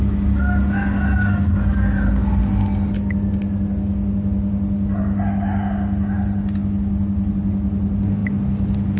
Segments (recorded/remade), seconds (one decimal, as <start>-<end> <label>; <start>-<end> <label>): 0.0-9.0 recorded